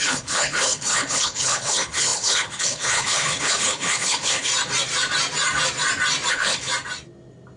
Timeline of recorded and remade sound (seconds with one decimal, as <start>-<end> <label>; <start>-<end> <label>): 0.0-4.5 remade; 4.5-6.3 recorded; 6.3-6.7 remade; 6.7-7.6 recorded